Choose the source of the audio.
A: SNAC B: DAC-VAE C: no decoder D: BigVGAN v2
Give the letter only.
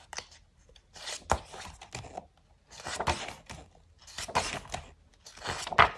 C